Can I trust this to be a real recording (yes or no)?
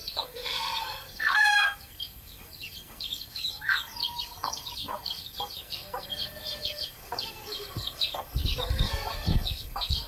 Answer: no